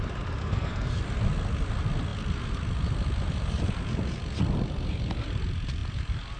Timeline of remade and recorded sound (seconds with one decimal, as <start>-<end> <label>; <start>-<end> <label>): 0.0-0.4 recorded; 0.4-1.0 remade; 1.0-6.4 recorded